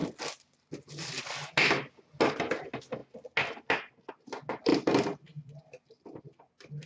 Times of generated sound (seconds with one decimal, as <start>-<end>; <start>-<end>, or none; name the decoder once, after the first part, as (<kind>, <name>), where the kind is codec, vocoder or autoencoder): none